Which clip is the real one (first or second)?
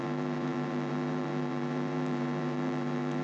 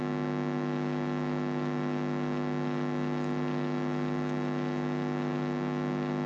second